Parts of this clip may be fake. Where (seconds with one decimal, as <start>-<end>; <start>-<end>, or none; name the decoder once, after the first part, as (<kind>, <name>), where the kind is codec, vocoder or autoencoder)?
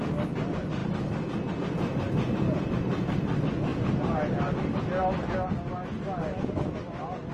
none